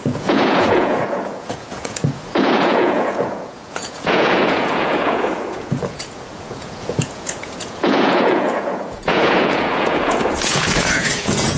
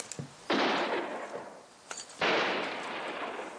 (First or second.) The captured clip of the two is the second